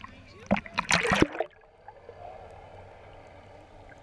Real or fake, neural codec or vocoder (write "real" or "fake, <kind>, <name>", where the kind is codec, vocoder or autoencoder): real